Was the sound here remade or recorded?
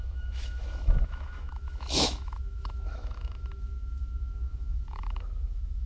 remade